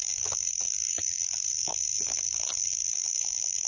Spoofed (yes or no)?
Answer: yes